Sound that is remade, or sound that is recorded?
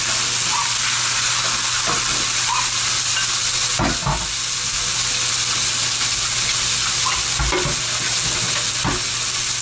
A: recorded